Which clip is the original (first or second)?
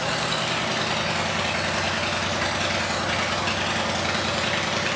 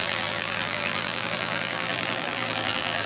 first